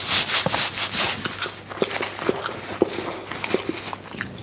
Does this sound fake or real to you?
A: real